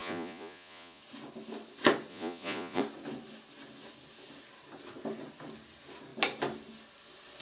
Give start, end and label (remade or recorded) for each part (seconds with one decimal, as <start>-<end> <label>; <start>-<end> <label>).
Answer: 0.0-1.0 remade; 1.0-2.1 recorded; 2.1-2.8 remade; 2.8-7.4 recorded